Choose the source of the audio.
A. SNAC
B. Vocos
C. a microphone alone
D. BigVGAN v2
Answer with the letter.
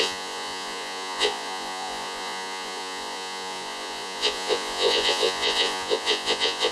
B